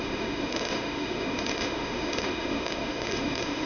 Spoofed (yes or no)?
yes